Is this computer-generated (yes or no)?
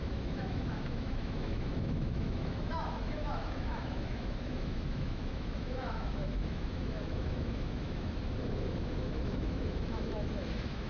yes